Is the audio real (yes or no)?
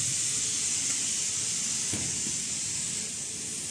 yes